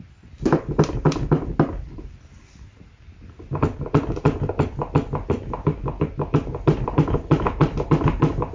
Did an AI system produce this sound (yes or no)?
no